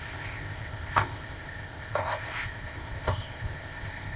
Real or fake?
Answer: fake